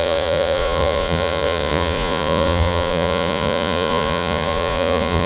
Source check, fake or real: fake